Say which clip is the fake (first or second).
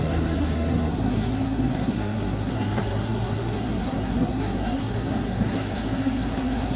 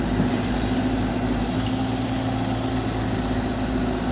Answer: first